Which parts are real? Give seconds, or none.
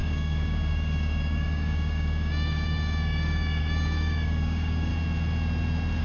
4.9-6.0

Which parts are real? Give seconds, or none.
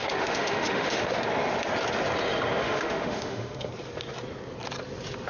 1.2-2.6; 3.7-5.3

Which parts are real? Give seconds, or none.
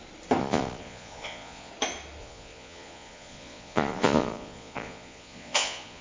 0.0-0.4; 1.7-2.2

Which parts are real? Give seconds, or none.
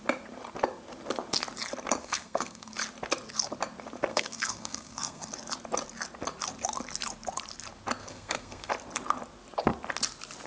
0.0-2.0; 2.7-4.1; 5.3-8.0; 8.7-10.5